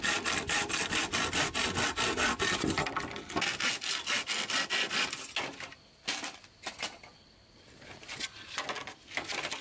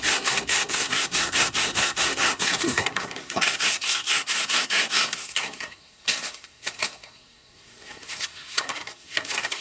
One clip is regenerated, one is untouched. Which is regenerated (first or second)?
second